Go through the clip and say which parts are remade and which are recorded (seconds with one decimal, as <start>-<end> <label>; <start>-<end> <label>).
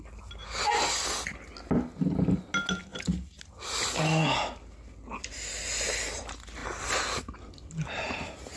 0.0-8.6 recorded